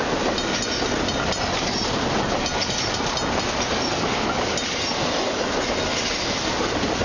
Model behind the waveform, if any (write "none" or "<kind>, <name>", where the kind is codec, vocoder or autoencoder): none